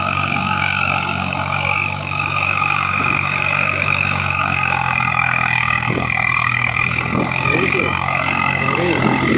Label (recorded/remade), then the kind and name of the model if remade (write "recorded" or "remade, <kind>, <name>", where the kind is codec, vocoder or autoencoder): remade, codec, DAC